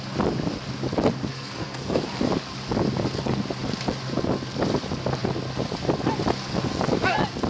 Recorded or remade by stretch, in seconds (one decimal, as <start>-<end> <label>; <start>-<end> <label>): 0.0-1.3 recorded; 1.3-2.0 remade; 2.0-7.5 recorded